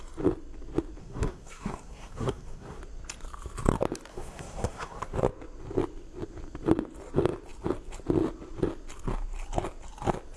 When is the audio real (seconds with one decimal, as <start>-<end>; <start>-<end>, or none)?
0.0-1.0; 2.8-4.1; 5.0-10.4